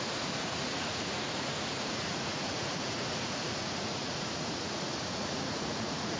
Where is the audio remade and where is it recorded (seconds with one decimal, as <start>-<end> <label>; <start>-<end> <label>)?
0.0-6.2 remade